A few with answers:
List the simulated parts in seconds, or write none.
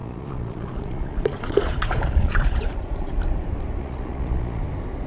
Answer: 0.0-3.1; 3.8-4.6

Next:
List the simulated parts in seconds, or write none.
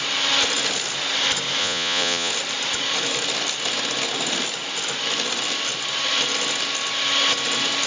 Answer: 1.6-2.3